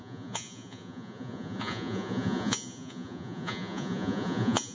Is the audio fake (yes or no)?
yes